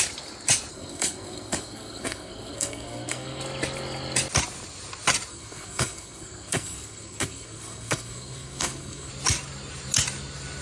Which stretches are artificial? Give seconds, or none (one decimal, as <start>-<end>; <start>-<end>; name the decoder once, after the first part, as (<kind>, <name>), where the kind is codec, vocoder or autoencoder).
0.7-3.4 (codec, SNAC); 5.3-9.1